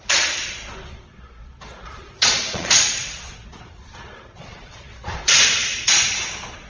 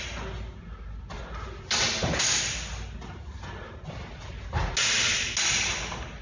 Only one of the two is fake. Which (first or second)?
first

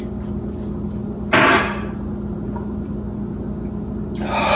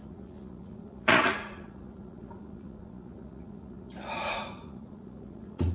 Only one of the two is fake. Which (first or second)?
second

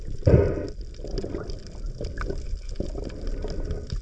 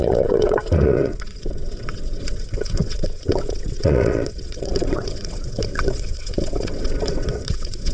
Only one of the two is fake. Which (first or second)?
second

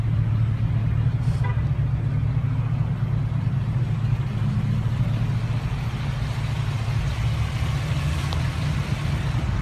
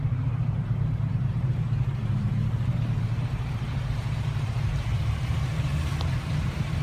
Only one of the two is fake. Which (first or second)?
second